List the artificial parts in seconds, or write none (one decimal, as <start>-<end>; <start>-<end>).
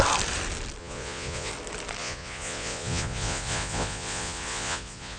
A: 0.8-1.5; 2.0-5.2